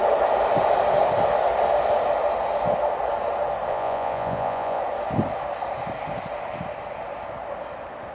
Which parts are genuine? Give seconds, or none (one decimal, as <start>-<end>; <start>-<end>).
0.0-3.7; 4.8-8.1